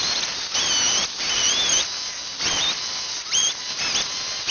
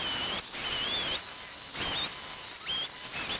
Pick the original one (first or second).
second